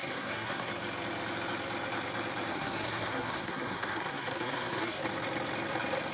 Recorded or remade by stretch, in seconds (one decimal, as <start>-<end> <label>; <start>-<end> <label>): 0.0-0.7 remade; 0.7-2.5 recorded; 2.5-5.0 remade; 5.0-6.1 recorded